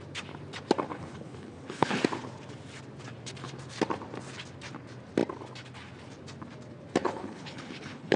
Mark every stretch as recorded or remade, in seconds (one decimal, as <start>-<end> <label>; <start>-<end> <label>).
0.0-0.9 recorded; 0.9-2.0 remade; 2.0-7.0 recorded; 7.0-8.2 remade